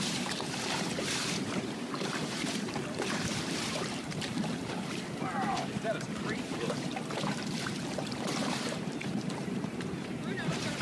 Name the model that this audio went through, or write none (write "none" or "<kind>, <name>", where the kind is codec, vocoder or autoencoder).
vocoder, BigVGAN v2